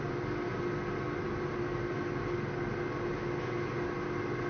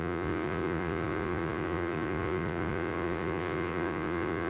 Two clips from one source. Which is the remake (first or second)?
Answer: second